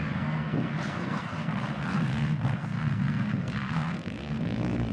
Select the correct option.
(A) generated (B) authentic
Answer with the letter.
A